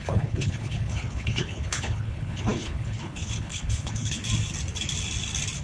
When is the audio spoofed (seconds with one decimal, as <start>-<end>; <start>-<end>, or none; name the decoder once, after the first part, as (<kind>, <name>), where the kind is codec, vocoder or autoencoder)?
0.0-4.2 (codec, HILCodec)